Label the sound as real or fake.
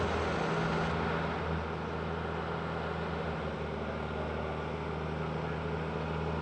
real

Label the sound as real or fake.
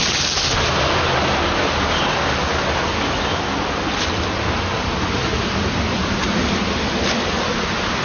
real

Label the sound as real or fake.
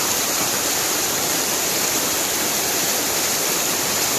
fake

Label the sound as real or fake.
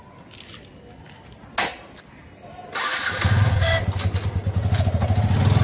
real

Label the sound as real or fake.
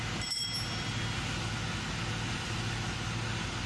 real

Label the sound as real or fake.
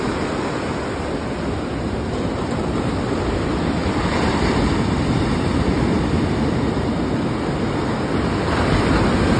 real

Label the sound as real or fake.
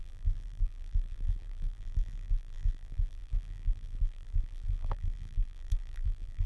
fake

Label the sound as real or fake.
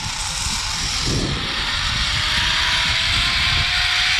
real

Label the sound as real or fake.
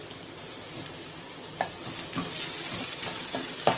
real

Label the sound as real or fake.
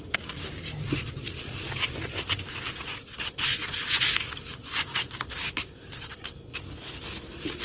real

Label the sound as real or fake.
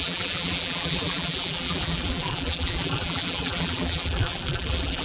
fake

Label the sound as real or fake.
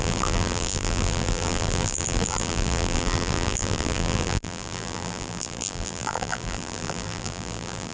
fake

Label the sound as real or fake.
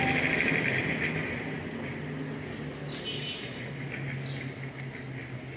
real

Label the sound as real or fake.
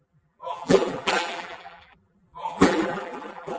fake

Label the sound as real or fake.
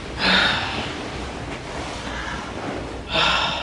fake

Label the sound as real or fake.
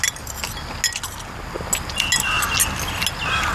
real